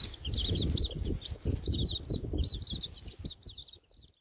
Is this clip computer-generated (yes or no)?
yes